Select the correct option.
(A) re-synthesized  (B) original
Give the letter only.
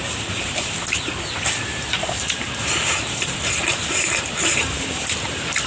A